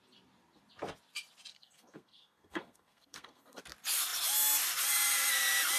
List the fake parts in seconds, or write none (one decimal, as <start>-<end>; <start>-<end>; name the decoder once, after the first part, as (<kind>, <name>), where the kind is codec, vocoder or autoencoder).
1.5-3.6 (codec, SNAC)